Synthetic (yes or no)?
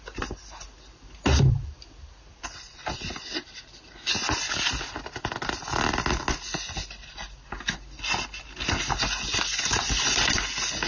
no